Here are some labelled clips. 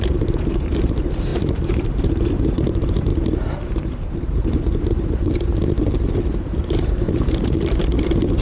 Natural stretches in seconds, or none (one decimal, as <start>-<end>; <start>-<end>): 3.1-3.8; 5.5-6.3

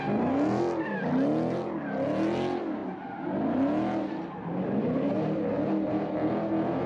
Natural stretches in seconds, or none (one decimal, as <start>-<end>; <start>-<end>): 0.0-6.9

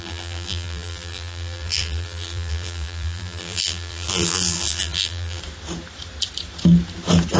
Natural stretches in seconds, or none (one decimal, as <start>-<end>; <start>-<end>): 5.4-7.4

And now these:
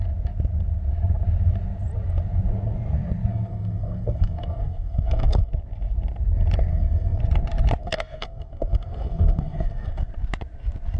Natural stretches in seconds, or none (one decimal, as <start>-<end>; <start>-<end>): 0.0-3.3; 5.5-6.7; 7.2-7.8; 10.1-11.0

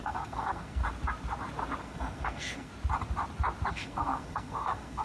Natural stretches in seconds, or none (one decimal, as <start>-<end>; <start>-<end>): 0.8-1.8; 2.7-3.7